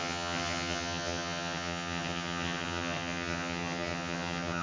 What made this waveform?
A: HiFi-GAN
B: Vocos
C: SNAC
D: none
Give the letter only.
A